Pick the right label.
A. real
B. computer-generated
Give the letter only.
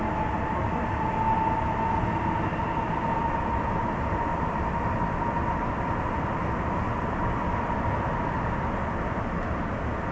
A